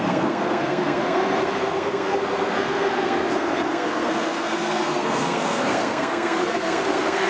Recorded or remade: remade